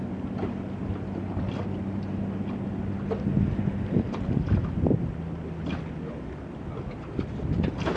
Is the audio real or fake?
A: real